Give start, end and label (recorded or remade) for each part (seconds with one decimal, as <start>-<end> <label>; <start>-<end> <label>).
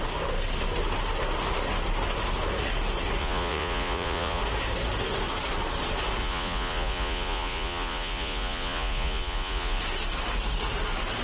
0.0-3.2 recorded; 3.2-4.4 remade; 4.4-6.2 recorded; 6.2-9.8 remade; 9.8-11.2 recorded